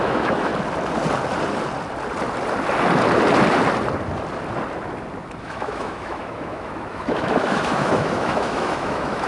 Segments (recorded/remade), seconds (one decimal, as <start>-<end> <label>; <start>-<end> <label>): 0.0-0.5 remade; 0.5-5.4 recorded; 5.4-9.3 remade